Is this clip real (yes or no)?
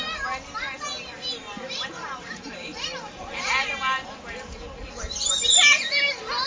yes